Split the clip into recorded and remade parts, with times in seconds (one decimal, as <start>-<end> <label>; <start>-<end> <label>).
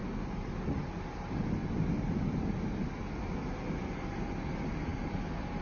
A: 0.0-4.9 recorded; 4.9-5.6 remade